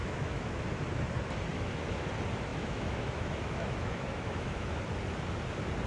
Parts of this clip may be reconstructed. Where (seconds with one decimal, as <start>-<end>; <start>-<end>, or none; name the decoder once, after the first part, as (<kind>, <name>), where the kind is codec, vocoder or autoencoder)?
0.0-0.6 (autoencoder, DAC-VAE); 1.5-2.1; 2.5-4.8

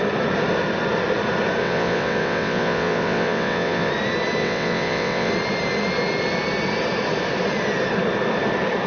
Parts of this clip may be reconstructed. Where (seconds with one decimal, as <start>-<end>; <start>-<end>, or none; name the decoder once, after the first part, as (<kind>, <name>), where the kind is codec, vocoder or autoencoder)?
1.6-3.9 (vocoder, WaveNeXt); 4.4-5.3

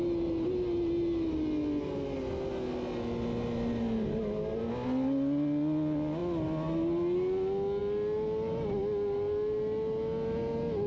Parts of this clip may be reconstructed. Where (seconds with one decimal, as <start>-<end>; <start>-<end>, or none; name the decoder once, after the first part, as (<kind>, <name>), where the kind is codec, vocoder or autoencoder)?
none